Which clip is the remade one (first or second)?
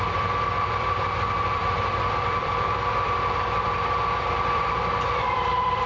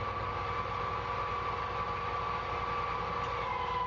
first